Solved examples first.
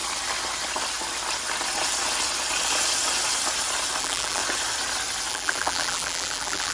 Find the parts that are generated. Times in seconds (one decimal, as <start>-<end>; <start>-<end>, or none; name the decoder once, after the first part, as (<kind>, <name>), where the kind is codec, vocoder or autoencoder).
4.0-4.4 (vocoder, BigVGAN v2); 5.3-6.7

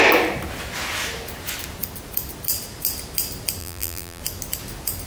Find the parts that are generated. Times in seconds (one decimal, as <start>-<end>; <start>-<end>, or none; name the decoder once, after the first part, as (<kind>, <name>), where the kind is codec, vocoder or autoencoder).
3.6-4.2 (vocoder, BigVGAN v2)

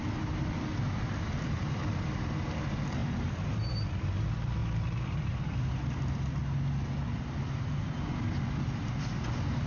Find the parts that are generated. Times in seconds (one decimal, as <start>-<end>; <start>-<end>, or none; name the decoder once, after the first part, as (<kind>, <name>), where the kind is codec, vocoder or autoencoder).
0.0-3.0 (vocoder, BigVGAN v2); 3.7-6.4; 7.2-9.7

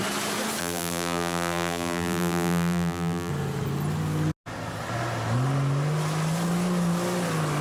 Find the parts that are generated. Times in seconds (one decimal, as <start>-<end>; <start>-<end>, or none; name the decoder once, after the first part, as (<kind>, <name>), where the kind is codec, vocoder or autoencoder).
0.6-3.3 (vocoder, BigVGAN v2)